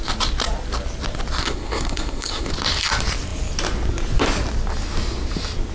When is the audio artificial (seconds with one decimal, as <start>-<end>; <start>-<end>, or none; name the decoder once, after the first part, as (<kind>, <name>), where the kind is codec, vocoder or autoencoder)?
1.4-2.5 (codec, SNAC)